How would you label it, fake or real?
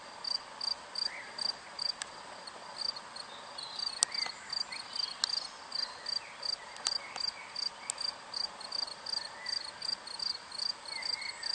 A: real